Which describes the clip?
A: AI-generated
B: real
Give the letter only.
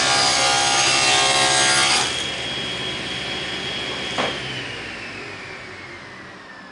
B